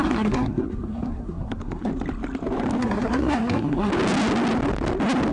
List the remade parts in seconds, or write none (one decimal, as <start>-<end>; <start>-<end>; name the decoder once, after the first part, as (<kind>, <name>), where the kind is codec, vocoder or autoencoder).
0.0-1.9 (codec, SNAC); 2.8-3.9